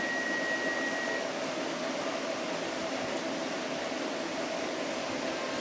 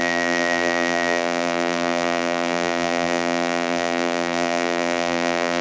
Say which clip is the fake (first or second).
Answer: second